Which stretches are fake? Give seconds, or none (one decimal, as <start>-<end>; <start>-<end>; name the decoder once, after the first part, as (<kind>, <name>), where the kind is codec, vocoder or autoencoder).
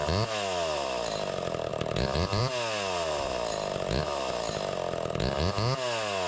1.7-2.4 (vocoder, BigVGAN v2)